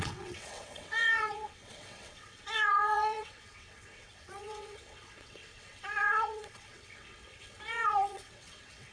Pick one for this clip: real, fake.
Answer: fake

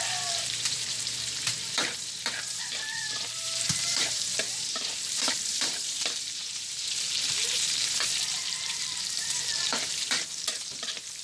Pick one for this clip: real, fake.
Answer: fake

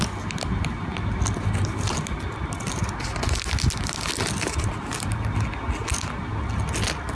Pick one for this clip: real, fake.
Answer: real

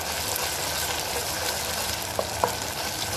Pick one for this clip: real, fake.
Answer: real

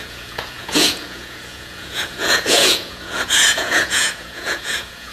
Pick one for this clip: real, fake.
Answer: fake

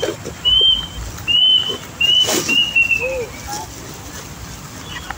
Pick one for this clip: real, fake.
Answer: real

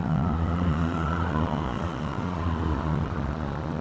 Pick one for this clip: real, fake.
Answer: fake